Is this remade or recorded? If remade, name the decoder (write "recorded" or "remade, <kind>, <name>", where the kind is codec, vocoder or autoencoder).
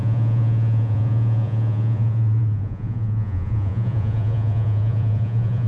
remade, vocoder, Vocos